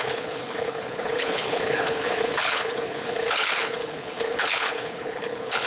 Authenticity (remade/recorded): remade